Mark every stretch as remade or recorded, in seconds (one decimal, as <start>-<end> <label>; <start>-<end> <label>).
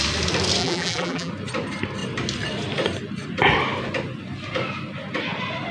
0.0-0.6 recorded; 0.6-1.3 remade; 1.3-5.7 recorded